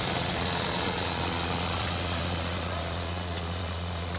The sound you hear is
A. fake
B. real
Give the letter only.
A